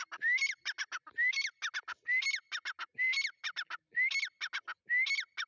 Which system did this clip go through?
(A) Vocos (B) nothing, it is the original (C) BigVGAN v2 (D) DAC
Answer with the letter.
B